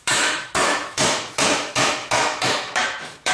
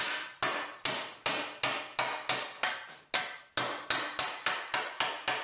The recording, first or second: second